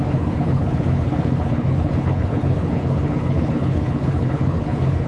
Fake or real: fake